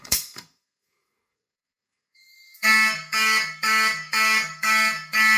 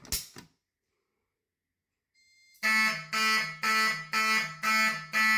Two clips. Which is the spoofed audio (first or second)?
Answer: first